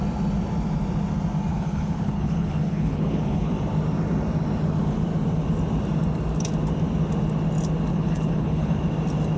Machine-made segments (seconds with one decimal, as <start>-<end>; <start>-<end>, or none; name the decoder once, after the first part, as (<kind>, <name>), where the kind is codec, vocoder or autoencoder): 1.5-3.5 (codec, HILCodec); 7.9-8.8